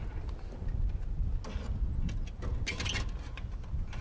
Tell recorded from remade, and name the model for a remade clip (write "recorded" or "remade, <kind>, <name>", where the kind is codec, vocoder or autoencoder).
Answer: recorded